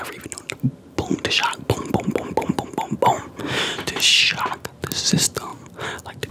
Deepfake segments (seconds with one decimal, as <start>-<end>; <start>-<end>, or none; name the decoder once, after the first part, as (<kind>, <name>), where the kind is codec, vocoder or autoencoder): none